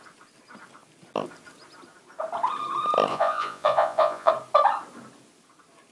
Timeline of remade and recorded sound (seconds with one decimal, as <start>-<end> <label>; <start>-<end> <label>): 0.0-3.1 recorded; 3.1-4.3 remade; 4.3-5.9 recorded